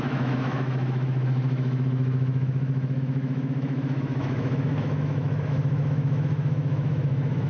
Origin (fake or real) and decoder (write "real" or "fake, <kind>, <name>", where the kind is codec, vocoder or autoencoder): fake, autoencoder, DAC-VAE